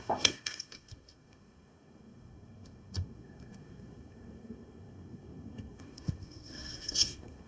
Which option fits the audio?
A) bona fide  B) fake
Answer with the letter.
B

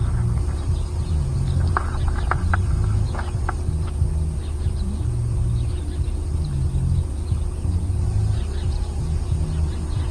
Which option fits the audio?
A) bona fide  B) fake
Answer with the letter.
A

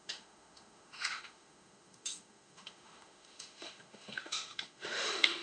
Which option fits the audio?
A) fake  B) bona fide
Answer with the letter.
A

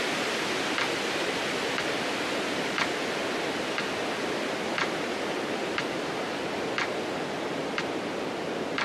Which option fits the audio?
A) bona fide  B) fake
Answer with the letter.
B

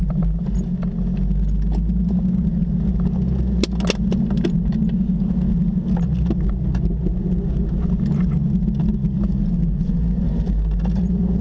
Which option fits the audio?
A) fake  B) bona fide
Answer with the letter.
B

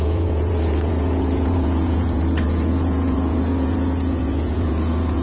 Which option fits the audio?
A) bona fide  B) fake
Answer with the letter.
B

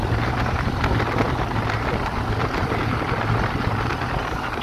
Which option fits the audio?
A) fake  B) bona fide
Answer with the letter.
B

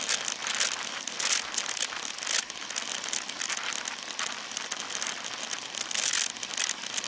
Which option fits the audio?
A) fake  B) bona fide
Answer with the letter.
B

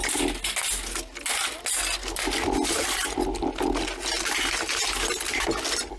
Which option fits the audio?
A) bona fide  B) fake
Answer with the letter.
A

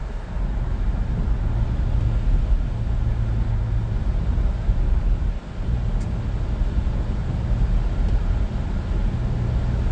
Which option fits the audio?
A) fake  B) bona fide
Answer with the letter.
B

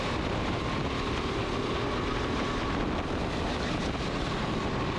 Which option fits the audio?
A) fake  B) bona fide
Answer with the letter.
B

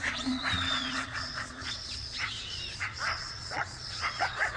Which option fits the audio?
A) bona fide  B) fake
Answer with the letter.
B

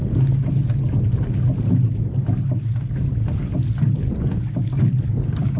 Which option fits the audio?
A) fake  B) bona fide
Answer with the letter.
B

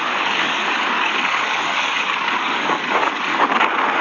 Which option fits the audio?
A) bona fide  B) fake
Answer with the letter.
B